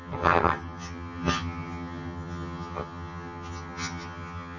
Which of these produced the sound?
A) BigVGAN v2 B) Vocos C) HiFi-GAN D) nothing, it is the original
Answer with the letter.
C